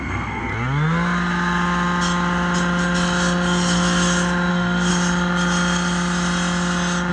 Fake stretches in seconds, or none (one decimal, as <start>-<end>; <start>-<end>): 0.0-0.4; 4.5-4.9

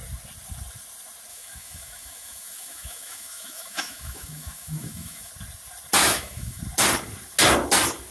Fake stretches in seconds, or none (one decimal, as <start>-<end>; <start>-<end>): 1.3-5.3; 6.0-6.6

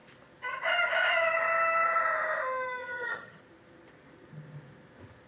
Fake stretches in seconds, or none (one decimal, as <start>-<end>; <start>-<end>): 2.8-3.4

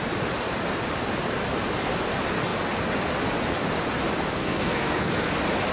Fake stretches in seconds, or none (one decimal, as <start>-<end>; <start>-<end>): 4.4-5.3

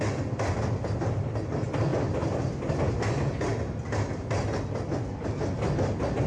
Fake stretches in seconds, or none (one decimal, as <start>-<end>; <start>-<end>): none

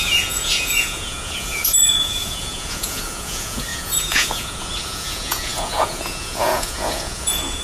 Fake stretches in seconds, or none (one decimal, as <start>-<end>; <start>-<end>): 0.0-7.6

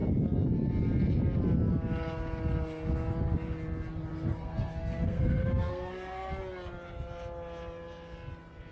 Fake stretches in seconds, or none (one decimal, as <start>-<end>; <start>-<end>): 4.1-6.3

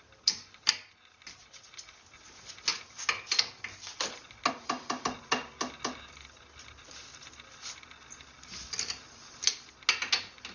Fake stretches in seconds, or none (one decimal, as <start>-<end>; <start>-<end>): none